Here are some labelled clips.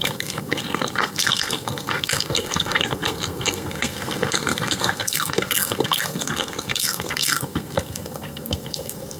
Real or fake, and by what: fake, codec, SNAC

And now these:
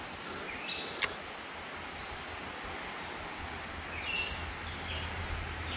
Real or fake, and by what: real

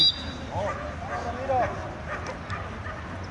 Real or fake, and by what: real